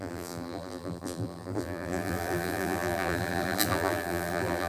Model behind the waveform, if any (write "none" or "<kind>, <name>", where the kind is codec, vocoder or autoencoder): vocoder, BigVGAN v2